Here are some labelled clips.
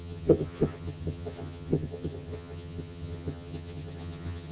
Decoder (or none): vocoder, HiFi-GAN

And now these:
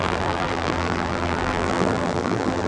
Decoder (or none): vocoder, BigVGAN v2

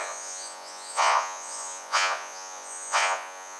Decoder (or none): vocoder, Vocos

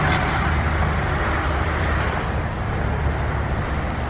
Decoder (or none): none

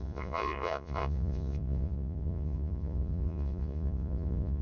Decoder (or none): vocoder, Vocos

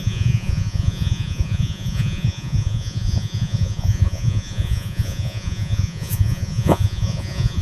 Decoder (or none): vocoder, Vocos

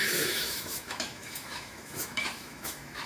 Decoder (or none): autoencoder, DAC-VAE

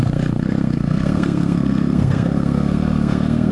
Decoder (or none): codec, SNAC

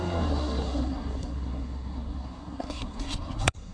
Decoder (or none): codec, SNAC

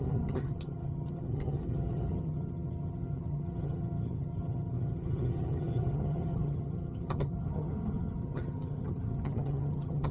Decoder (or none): vocoder, HiFi-GAN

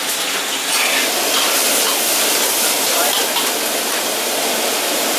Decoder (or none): none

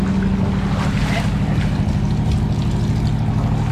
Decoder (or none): none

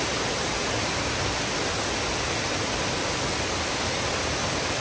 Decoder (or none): none